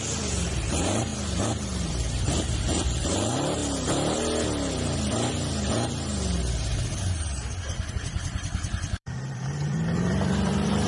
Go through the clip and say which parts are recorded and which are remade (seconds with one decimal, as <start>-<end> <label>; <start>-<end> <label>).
0.0-3.6 remade; 3.6-7.9 recorded; 7.9-10.9 remade